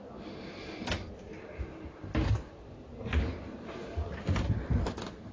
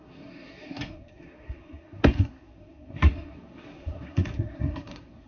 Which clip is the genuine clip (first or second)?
first